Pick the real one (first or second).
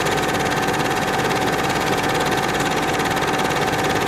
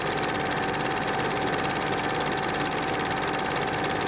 second